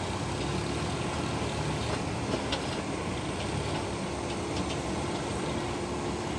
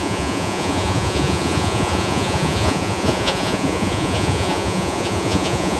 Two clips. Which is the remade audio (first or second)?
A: second